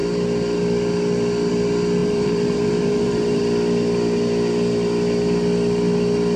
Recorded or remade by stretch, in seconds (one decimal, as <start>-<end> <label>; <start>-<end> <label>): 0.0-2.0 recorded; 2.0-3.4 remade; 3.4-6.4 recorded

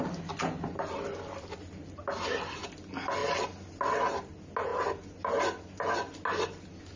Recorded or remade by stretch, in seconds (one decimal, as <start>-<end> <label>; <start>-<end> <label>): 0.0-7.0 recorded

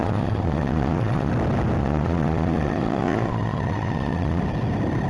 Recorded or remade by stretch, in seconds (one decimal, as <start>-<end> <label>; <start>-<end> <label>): 0.0-1.3 remade; 1.3-1.8 recorded; 1.8-4.4 remade; 4.4-5.1 recorded